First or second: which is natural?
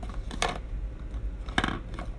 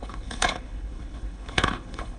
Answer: first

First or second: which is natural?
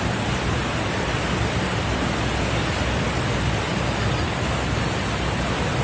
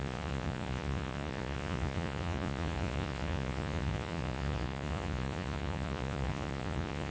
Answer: first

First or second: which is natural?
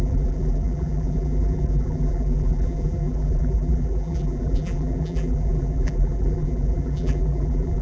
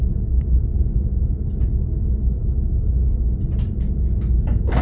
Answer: second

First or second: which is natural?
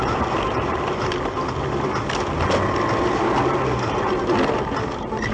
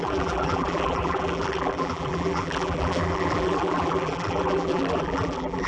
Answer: first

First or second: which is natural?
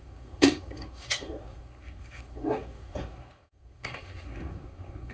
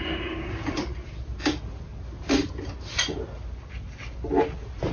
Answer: second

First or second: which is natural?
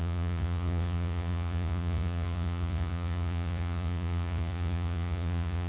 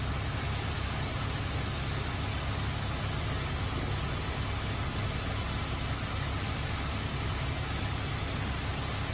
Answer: second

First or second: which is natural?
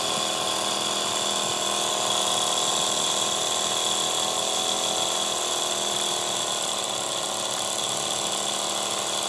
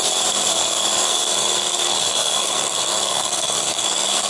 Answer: first